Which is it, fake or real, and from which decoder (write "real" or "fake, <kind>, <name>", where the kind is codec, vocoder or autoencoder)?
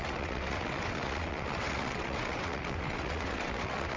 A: fake, vocoder, WaveNeXt